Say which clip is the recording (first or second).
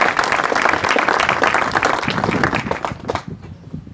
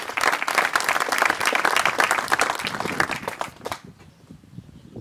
first